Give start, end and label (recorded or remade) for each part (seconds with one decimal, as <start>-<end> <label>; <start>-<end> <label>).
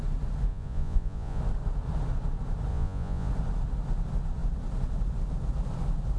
0.0-0.5 recorded; 0.5-1.4 remade; 1.4-2.7 recorded; 2.7-3.3 remade; 3.3-6.2 recorded